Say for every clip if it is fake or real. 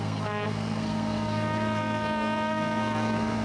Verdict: fake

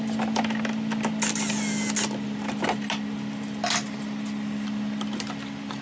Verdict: real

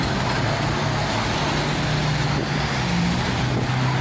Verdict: real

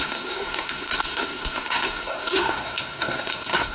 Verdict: fake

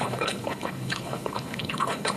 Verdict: fake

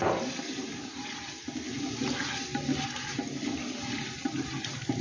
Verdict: real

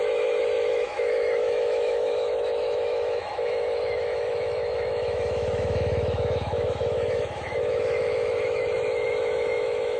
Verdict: fake